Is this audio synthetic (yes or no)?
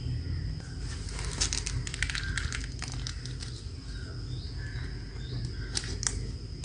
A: no